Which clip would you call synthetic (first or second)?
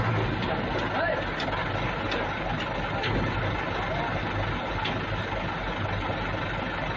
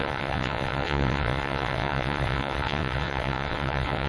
second